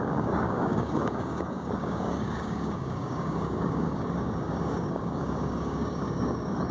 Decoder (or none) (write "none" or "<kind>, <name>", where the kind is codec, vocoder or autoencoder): codec, DAC